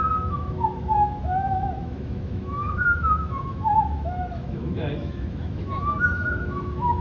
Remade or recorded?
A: remade